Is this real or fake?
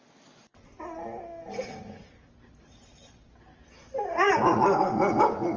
real